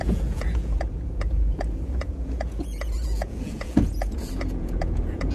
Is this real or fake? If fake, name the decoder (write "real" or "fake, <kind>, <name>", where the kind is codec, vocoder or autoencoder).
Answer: fake, vocoder, Vocos